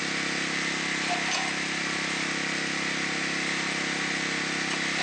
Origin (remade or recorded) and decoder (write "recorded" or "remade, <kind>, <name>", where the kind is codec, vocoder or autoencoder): recorded